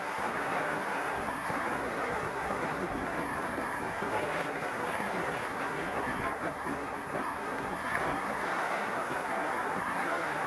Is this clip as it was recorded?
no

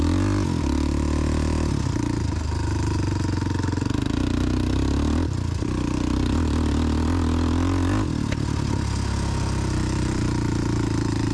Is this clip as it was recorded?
yes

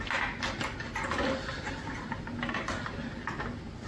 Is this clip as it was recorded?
yes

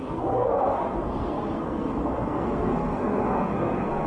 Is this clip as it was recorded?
no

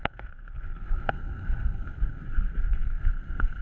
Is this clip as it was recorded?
no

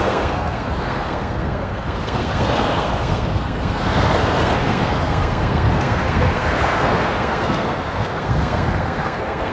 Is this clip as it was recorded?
no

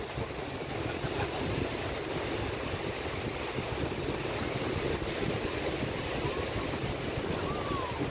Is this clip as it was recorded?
yes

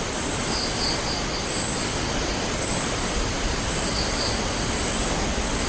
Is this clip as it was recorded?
yes